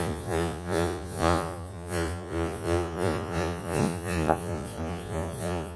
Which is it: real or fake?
fake